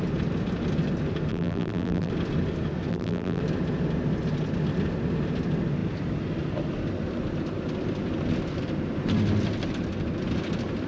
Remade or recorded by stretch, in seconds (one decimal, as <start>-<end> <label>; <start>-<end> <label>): 0.0-1.3 recorded; 1.3-2.1 remade; 2.1-2.9 recorded; 2.9-3.4 remade; 3.4-10.9 recorded